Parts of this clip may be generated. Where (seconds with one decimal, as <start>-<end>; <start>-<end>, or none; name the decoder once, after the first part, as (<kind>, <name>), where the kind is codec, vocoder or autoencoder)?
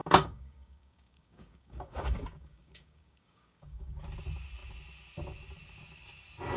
0.0-4.0 (codec, DAC)